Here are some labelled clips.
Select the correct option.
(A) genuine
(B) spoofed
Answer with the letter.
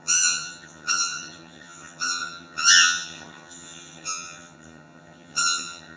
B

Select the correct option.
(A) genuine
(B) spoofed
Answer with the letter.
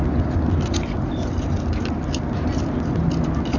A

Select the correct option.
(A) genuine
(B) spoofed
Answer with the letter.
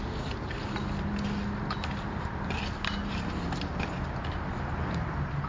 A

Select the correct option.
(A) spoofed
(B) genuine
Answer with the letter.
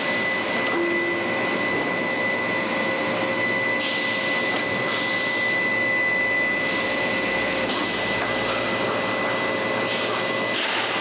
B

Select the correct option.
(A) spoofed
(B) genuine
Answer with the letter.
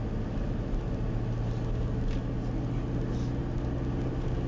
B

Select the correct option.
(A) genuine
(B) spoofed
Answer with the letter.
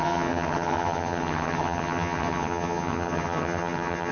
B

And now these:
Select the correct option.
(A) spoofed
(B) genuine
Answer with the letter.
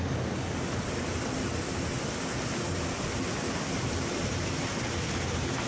B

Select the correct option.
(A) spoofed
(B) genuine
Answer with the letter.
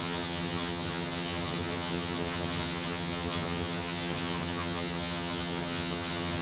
A